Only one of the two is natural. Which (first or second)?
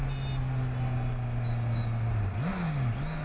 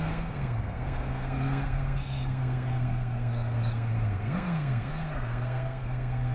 first